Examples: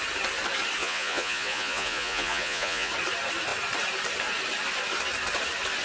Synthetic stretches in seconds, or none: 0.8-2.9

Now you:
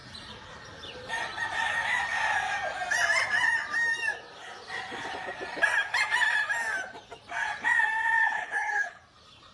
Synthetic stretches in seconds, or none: 8.2-9.0

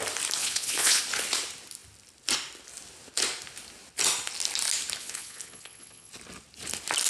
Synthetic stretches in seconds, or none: 0.4-1.0; 5.0-6.1

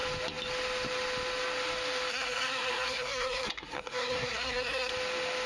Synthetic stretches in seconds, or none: 2.1-4.9

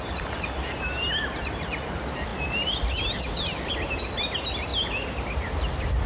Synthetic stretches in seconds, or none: none